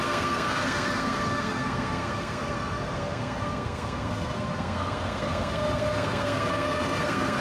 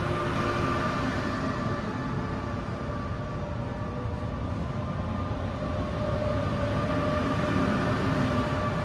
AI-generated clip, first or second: first